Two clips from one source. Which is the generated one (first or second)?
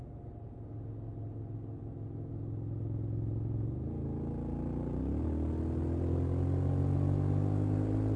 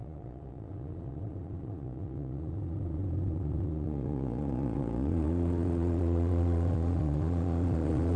second